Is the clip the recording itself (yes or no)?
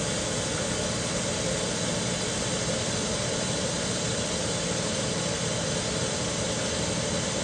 yes